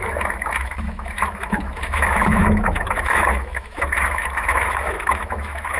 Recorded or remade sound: remade